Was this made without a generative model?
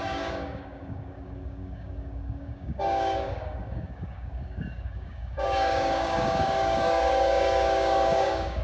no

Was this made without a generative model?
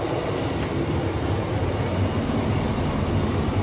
yes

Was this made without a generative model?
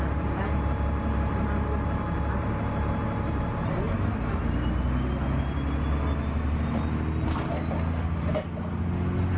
yes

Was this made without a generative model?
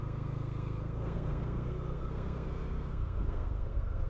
no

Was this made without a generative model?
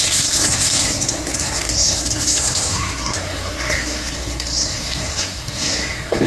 no